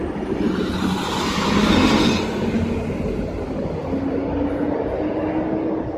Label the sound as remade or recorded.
recorded